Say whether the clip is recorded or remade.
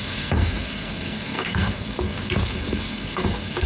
remade